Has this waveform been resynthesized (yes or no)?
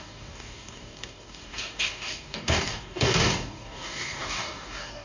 yes